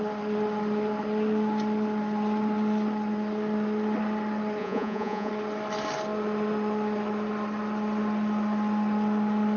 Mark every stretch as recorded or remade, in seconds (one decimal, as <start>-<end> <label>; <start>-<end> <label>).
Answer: 0.0-4.6 recorded; 4.6-5.3 remade; 5.3-9.6 recorded